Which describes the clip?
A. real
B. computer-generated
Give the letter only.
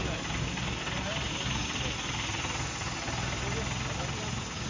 A